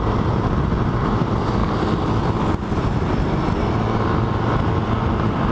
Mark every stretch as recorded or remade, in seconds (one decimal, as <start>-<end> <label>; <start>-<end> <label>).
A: 0.0-5.5 recorded